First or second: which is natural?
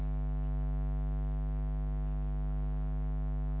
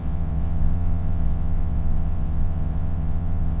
first